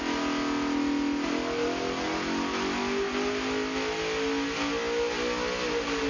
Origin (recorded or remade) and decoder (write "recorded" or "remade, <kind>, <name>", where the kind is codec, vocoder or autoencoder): recorded